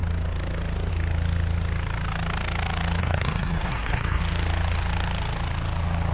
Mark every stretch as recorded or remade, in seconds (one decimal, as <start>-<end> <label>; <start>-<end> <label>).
0.0-3.0 recorded; 3.0-4.2 remade; 4.2-6.1 recorded